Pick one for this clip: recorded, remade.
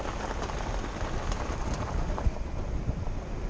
recorded